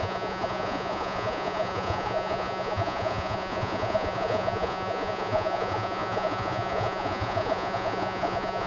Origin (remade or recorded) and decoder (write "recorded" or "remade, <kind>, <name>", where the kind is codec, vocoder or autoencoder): remade, vocoder, Vocos